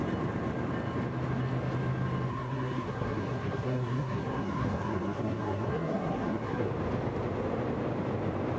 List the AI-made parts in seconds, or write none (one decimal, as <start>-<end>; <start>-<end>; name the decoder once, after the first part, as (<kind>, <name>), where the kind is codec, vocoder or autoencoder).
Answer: 2.3-6.7 (codec, SNAC)